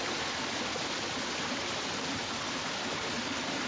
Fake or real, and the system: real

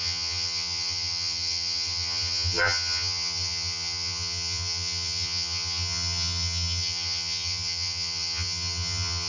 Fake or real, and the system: fake, vocoder, HiFi-GAN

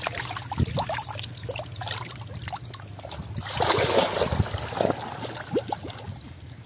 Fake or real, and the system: real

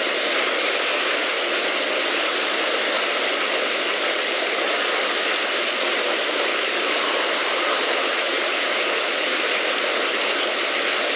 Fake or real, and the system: real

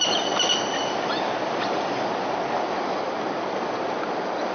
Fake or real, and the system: real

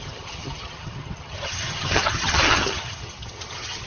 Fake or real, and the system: fake, vocoder, HiFi-GAN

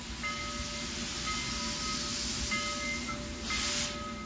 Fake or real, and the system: real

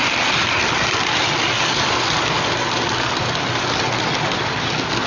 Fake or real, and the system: real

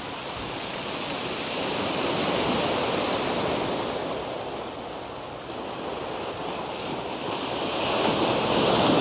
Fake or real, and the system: real